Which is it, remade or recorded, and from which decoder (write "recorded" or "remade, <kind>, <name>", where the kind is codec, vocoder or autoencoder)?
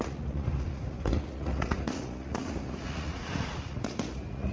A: remade, vocoder, Vocos